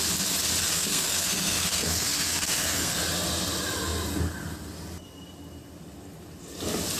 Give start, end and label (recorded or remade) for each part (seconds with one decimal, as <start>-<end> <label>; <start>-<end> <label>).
0.0-0.6 recorded; 0.6-3.0 remade; 3.0-7.0 recorded